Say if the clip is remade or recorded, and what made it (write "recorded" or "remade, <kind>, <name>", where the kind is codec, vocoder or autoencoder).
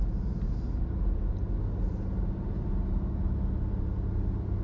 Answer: recorded